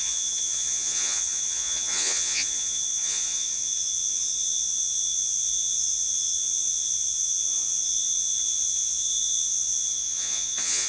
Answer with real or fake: fake